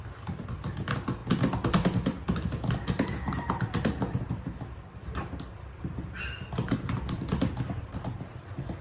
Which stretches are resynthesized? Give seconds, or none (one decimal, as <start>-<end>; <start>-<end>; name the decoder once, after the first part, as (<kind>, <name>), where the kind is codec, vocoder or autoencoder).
0.0-1.2 (vocoder, BigVGAN v2); 2.7-8.8